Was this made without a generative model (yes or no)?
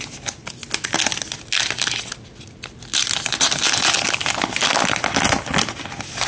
yes